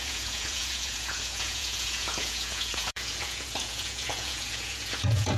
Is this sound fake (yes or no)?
yes